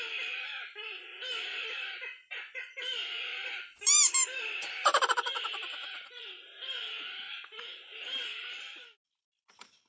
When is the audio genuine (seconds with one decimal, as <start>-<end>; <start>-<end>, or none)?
5.3-7.2